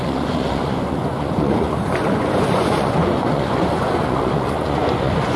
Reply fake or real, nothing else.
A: fake